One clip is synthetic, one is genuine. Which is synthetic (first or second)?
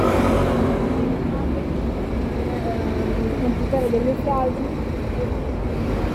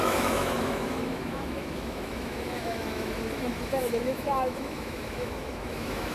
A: second